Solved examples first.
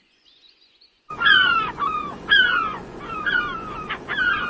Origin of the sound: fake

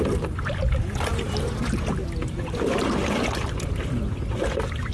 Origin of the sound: real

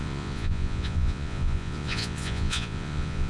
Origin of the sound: fake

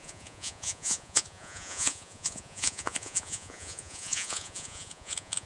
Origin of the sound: fake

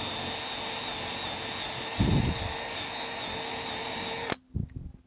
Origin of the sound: real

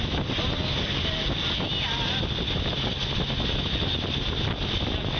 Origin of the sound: real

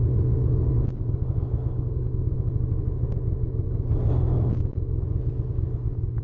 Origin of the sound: real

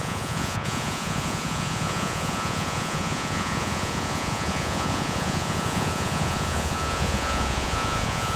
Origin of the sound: fake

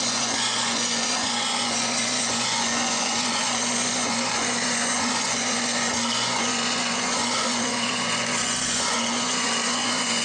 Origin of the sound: fake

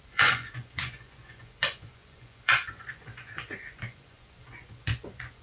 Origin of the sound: fake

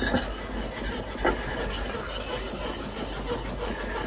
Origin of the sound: real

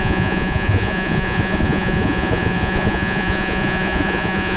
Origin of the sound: fake